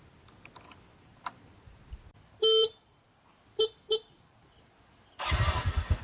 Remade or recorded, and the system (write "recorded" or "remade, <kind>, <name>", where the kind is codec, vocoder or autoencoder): recorded